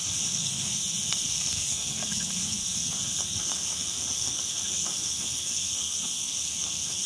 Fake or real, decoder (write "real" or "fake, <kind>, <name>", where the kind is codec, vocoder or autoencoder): fake, codec, SNAC